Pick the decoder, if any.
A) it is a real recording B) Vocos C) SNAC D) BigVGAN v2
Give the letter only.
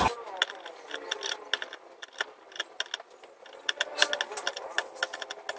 A